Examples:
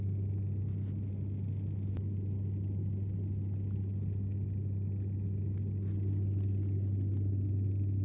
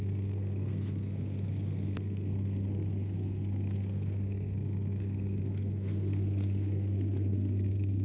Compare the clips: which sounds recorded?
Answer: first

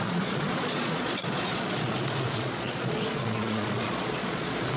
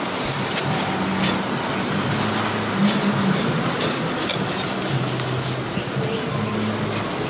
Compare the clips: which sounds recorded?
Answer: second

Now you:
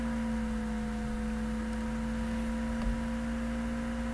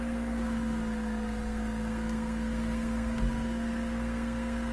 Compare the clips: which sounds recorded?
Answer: first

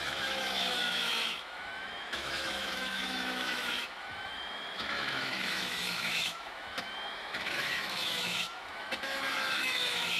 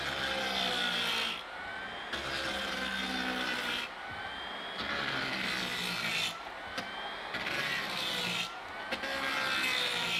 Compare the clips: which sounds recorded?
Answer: second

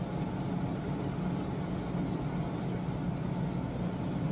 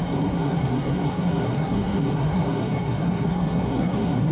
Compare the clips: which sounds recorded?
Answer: first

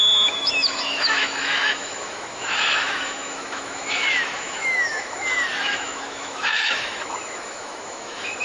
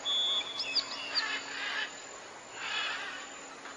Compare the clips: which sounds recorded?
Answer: second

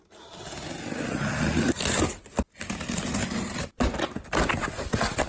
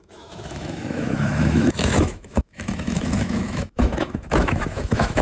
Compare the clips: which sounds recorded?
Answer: first